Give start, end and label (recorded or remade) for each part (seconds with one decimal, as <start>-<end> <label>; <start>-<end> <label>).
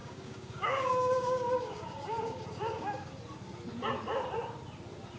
0.0-3.1 remade; 3.1-5.2 recorded